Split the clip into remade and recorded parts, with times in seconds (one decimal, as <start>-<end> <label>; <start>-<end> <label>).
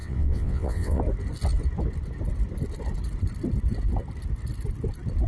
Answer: 0.0-1.0 remade; 1.0-5.3 recorded